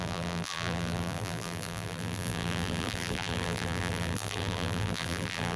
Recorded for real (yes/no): no